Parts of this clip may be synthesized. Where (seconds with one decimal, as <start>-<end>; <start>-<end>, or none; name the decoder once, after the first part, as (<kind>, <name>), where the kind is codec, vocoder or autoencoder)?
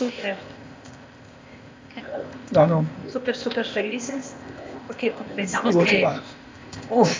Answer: 0.0-7.2 (codec, ZipCodec)